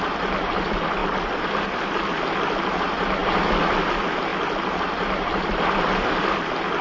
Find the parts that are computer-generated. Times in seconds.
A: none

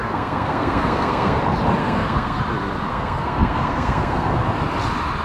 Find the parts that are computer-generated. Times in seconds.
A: 0.0-1.4; 1.8-2.4; 2.9-4.4

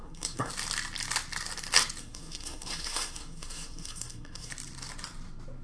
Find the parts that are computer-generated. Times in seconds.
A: 0.0-0.5; 2.0-4.5

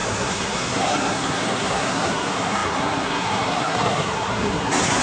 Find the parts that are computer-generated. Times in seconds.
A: 0.0-5.0

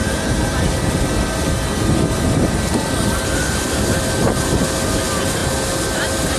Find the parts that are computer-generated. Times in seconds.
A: none

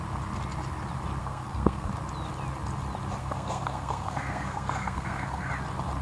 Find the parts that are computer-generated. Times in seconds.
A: 1.2-1.9; 3.2-5.5